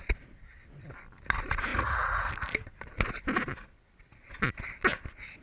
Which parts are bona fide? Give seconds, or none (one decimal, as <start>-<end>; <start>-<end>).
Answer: 0.0-1.7; 2.3-5.4